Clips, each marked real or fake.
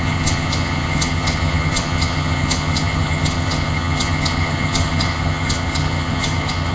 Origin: fake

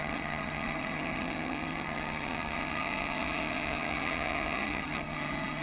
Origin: fake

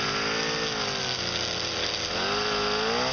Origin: real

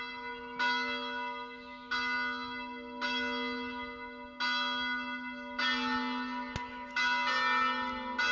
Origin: real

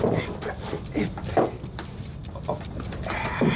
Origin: real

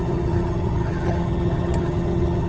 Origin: fake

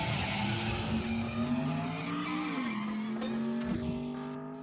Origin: real